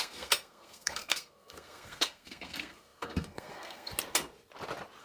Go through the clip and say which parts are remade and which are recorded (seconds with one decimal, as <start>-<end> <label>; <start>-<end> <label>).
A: 0.0-3.9 remade; 3.9-5.0 recorded